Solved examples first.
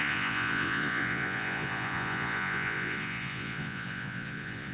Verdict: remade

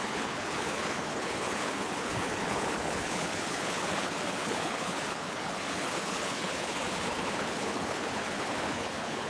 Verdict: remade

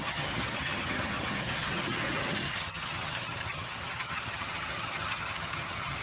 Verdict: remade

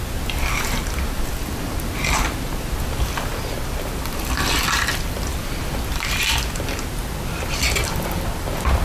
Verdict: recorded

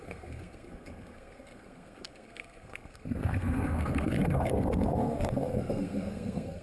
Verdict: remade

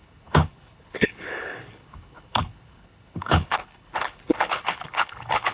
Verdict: remade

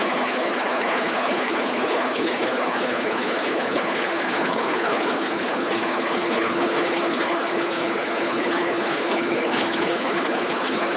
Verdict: remade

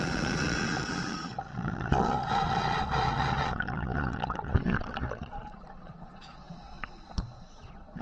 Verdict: remade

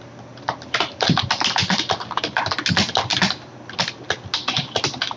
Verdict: recorded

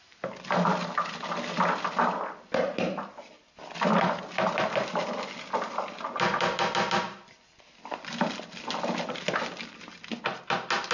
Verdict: recorded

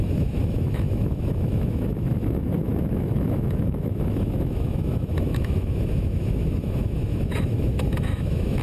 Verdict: remade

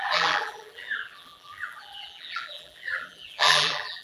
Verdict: remade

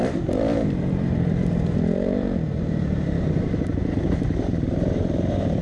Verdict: remade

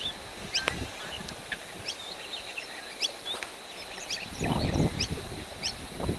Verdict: recorded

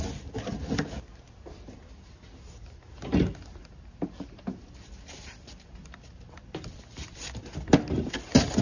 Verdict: recorded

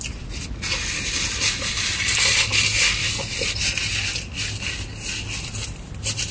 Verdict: recorded